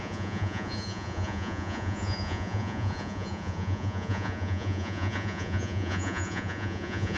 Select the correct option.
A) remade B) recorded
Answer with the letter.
A